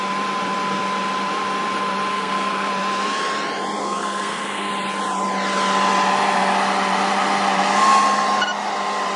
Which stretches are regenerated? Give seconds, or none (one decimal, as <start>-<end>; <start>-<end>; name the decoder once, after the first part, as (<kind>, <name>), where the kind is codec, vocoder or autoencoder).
2.1-2.7 (codec, SNAC); 3.8-4.7